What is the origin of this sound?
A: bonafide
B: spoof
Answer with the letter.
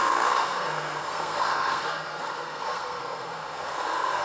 B